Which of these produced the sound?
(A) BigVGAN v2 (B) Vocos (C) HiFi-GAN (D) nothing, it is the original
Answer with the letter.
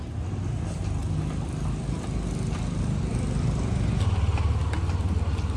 D